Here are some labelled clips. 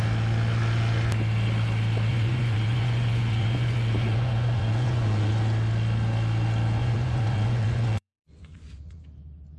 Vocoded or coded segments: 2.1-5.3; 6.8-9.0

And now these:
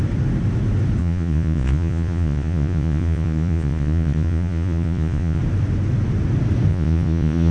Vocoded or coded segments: 1.0-5.4; 6.7-7.5

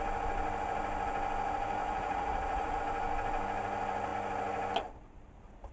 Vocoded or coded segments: 1.8-2.8